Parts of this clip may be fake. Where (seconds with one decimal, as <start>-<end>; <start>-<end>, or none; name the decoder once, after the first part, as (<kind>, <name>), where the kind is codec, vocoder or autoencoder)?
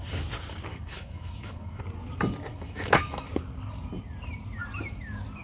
0.7-1.8 (autoencoder, DAC-VAE); 2.5-3.3